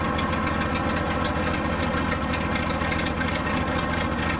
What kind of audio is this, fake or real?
real